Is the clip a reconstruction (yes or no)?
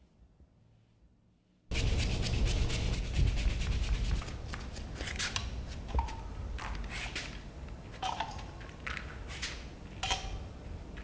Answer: no